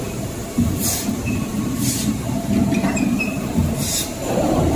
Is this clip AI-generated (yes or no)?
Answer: yes